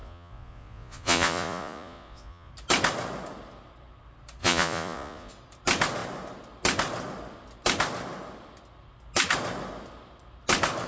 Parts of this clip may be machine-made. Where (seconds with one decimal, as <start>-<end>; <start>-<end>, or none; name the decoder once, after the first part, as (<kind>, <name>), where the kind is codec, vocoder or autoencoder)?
0.0-2.5 (vocoder, Vocos); 4.4-5.3